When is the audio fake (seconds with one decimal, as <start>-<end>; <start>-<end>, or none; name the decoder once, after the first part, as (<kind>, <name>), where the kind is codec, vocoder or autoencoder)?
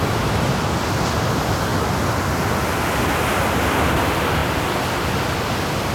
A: none